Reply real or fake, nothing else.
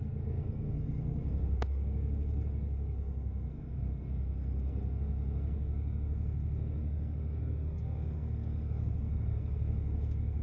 fake